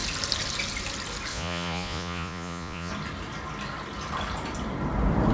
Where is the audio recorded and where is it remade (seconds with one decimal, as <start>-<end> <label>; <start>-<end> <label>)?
0.0-1.3 recorded; 1.3-2.9 remade; 2.9-5.3 recorded